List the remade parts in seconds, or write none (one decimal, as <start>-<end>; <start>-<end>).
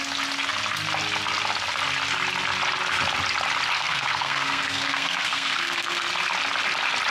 3.8-6.0